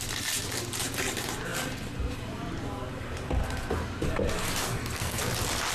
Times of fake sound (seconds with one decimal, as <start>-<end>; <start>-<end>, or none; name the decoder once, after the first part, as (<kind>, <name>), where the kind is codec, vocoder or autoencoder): 4.6-5.2 (codec, SNAC)